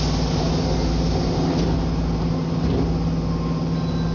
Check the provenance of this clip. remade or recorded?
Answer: recorded